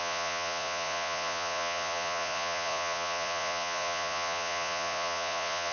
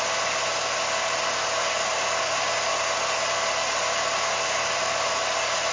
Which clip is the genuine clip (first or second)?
second